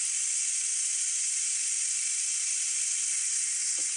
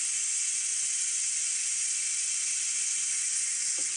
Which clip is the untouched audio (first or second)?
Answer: first